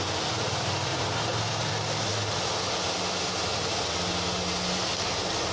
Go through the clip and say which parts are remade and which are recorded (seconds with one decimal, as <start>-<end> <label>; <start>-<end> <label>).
0.0-0.9 recorded; 0.9-1.7 remade; 1.7-5.5 recorded